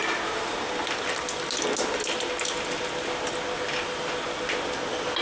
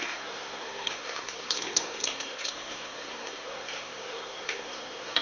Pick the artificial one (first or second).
second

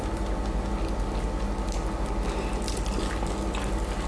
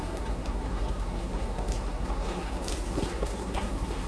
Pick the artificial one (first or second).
second